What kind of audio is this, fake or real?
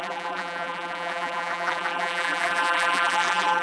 fake